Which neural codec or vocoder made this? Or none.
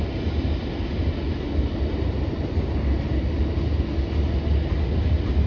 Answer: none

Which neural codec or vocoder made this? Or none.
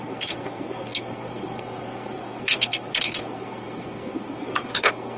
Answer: codec, SNAC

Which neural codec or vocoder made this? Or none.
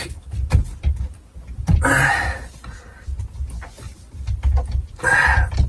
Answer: none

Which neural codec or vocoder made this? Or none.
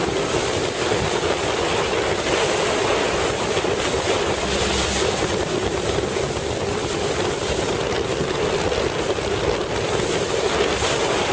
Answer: none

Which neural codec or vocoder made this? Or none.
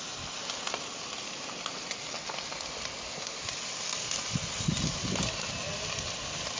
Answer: none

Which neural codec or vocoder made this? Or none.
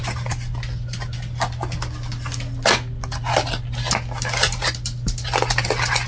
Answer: none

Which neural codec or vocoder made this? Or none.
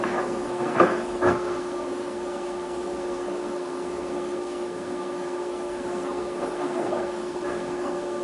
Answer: codec, SNAC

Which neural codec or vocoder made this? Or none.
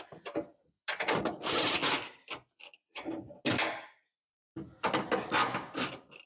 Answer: none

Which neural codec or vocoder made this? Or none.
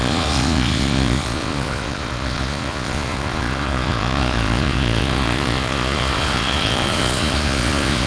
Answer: vocoder, Vocos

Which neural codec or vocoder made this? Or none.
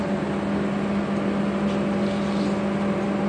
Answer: none